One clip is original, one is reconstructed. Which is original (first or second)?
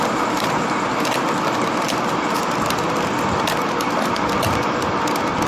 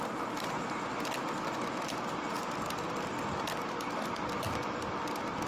second